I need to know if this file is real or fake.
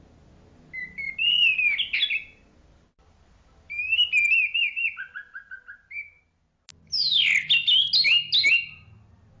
real